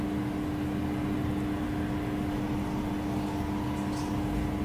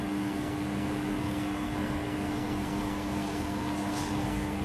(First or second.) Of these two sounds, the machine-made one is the second